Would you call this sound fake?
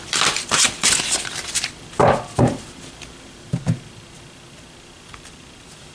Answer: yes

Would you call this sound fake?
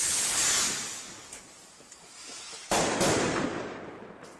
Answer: no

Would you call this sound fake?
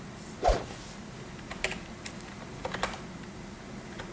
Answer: no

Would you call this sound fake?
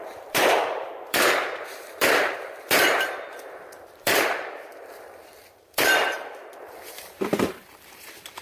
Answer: yes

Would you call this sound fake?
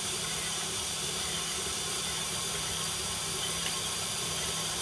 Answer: yes